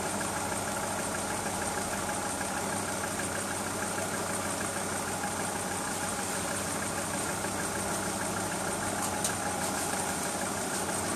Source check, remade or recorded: recorded